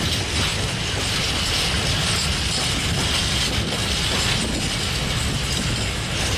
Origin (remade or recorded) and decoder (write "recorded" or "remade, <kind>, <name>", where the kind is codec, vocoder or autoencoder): recorded